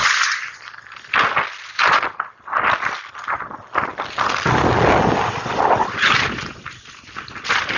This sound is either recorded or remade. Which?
recorded